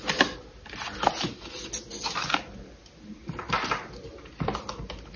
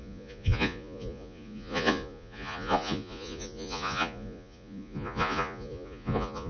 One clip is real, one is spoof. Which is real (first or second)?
first